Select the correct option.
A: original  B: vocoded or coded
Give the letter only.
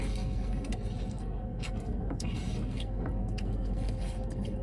B